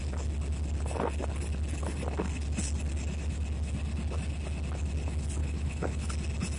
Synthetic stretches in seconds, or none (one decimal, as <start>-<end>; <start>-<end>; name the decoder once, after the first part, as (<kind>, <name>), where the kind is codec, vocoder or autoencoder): 5.4-6.1 (codec, HILCodec)